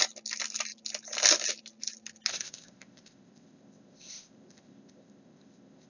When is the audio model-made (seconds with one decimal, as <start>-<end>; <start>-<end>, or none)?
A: 2.3-5.9